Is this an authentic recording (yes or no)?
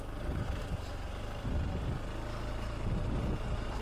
yes